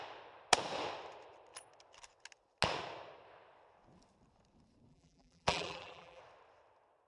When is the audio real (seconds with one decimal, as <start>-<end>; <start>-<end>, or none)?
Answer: 0.0-4.9; 6.2-7.1